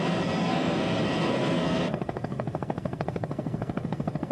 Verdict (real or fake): fake